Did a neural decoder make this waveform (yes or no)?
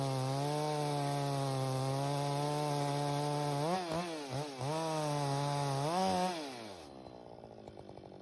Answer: no